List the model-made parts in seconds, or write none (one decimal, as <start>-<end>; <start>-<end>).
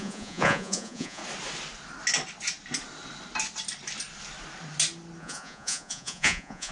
0.0-1.2; 5.2-6.7